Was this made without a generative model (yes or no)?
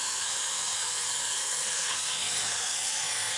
no